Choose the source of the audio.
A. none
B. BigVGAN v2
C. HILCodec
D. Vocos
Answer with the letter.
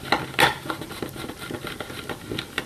A